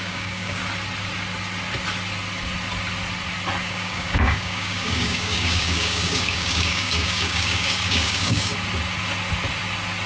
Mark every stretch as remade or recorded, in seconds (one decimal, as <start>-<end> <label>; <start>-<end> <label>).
0.0-0.6 remade; 0.6-3.6 recorded; 3.6-8.5 remade; 8.5-10.1 recorded